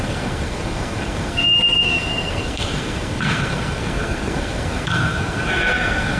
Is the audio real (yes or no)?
no